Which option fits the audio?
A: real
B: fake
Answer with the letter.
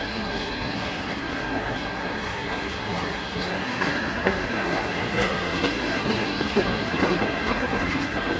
B